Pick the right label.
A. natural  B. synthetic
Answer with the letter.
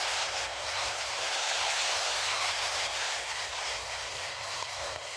B